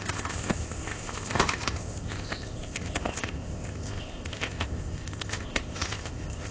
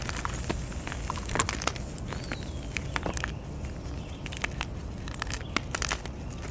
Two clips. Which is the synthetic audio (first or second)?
first